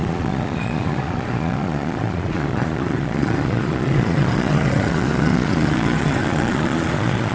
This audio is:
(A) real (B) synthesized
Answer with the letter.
B